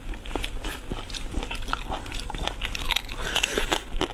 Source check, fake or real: real